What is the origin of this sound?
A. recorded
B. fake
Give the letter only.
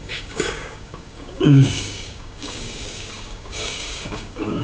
B